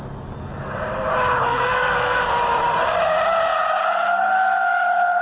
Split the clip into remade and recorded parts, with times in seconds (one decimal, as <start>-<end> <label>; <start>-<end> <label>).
0.0-1.5 recorded; 1.5-2.2 remade; 2.2-5.2 recorded